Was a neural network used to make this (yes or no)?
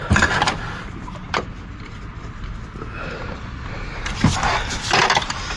no